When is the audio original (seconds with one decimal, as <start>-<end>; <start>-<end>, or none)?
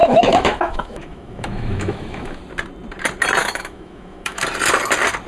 2.4-3.4; 4.4-5.3